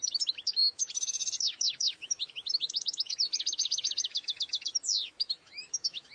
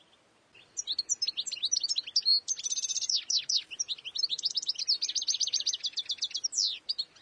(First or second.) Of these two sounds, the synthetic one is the first